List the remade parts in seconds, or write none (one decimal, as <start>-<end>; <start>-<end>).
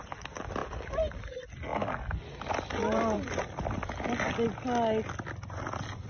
0.6-1.2; 1.7-3.4